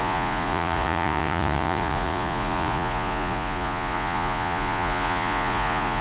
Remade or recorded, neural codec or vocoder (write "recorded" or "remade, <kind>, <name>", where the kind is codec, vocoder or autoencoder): remade, vocoder, Vocos